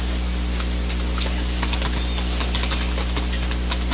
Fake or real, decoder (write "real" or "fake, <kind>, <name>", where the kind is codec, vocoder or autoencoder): real